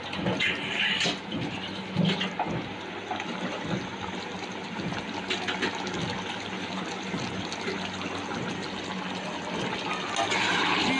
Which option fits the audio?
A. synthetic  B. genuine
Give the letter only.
B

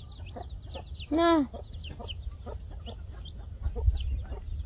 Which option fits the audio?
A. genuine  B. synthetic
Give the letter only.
A